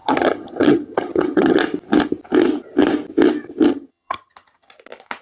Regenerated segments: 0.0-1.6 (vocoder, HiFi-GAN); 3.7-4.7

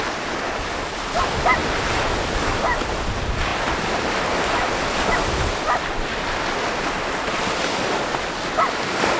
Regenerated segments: none

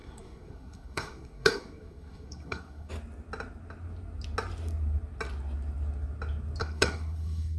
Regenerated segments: 0.0-2.9 (codec, SNAC); 6.6-7.6

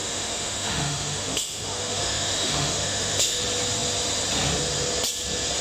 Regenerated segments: 0.0-3.4 (autoencoder, DAC-VAE)

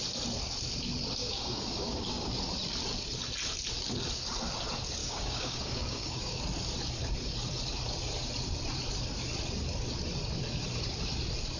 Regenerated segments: 1.2-2.3 (codec, DAC); 5.0-6.4

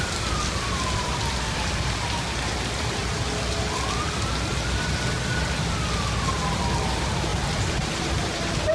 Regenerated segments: none

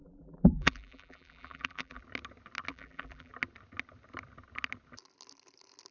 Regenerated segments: 0.0-2.0 (vocoder, BigVGAN v2); 2.7-3.3